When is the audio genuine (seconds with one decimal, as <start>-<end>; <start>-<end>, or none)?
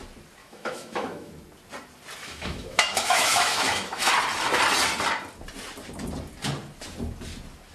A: 0.0-0.4; 1.3-2.2; 4.1-7.7